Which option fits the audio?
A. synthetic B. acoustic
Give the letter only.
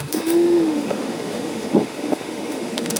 A